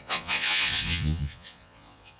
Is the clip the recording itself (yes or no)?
no